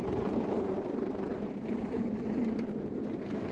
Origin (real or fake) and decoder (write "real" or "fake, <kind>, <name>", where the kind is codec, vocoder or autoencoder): fake, vocoder, BigVGAN v2